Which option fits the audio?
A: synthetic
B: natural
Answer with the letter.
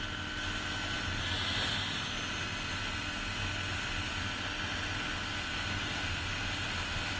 B